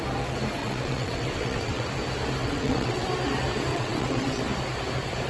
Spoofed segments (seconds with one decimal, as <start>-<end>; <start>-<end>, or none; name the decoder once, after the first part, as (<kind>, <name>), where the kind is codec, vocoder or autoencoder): 0.6-1.9 (vocoder, WaveNeXt); 2.4-3.1; 3.7-4.4